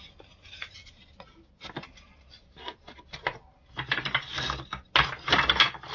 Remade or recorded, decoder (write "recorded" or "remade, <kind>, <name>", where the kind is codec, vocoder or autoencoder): recorded